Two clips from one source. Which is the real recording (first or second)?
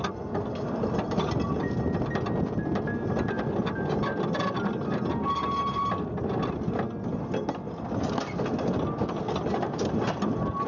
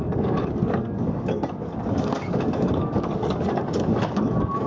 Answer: first